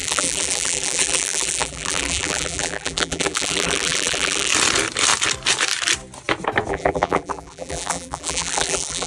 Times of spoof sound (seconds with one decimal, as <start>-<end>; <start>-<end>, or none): 0.0-4.5; 6.7-9.1